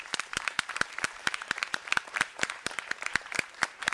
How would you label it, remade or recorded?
remade